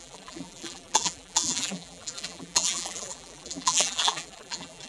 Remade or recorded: remade